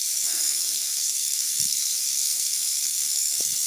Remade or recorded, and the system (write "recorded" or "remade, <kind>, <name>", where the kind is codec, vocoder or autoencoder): remade, codec, SNAC